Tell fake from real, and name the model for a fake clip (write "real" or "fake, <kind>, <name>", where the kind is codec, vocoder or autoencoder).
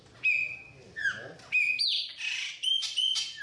real